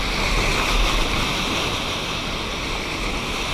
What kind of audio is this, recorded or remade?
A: recorded